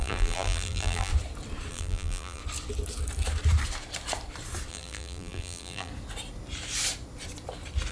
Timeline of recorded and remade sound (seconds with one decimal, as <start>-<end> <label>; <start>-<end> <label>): 0.0-1.1 remade; 1.1-1.7 recorded; 1.7-2.4 remade; 2.4-4.7 recorded; 4.7-5.9 remade; 5.9-7.9 recorded